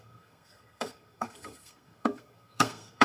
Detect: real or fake fake